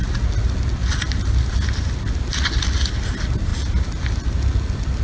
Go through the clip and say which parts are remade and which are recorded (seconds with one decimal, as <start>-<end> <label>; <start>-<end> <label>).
0.0-5.0 recorded